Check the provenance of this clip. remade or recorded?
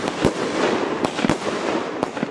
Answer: recorded